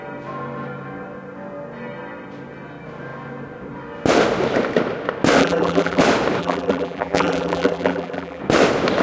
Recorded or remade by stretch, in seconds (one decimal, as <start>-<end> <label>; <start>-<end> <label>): 0.0-5.4 recorded; 5.4-6.0 remade; 6.0-6.4 recorded; 6.4-8.4 remade; 8.4-9.0 recorded